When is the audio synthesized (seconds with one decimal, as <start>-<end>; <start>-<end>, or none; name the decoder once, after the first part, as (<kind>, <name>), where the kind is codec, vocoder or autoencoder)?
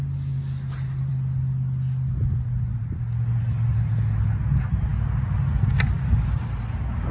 none